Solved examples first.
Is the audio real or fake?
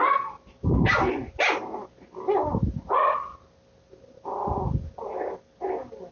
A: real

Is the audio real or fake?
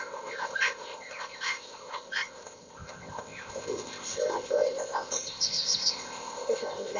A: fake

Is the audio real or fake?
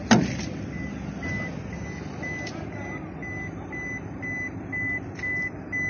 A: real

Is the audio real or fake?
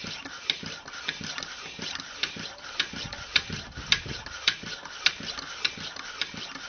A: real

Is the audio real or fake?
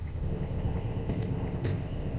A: fake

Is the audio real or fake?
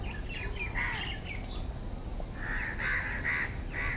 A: real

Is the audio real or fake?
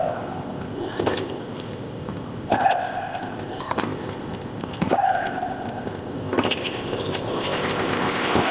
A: fake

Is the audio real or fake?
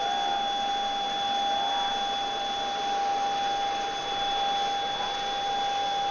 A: real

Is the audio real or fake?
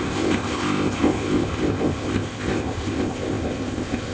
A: fake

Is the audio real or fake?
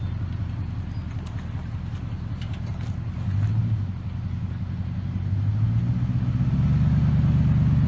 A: real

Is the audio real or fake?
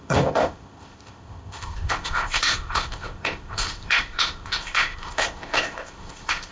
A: fake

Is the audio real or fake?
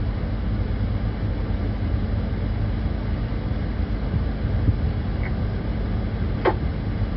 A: real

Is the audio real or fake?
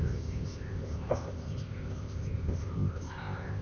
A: fake